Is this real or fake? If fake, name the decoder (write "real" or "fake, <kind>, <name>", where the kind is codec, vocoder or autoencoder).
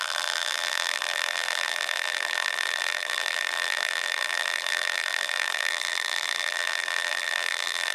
fake, vocoder, BigVGAN v2